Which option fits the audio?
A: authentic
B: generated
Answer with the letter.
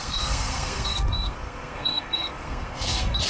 B